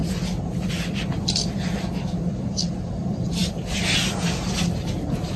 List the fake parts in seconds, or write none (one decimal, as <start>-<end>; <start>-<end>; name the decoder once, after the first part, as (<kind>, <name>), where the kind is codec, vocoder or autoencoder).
none